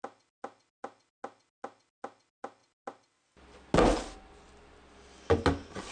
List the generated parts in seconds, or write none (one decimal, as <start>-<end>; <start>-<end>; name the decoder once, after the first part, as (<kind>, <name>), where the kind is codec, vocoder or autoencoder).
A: none